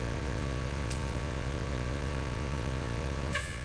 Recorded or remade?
remade